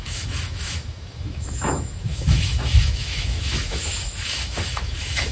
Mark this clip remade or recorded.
remade